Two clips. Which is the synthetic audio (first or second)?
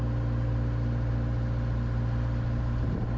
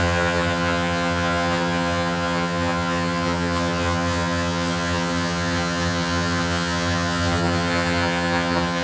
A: second